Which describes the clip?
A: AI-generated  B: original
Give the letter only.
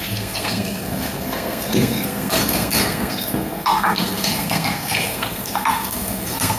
A